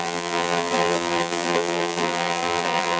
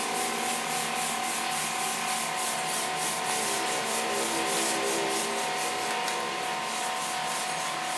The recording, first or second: second